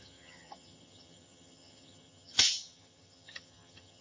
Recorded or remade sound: remade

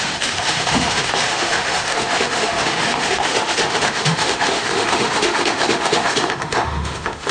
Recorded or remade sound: remade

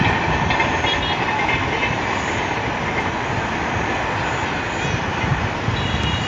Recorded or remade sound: recorded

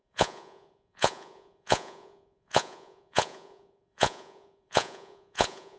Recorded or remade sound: remade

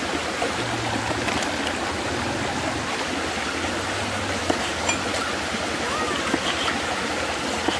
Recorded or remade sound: recorded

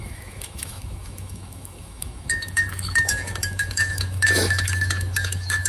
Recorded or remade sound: remade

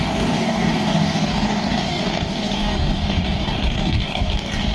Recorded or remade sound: remade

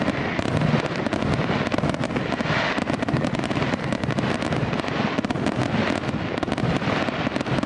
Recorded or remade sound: recorded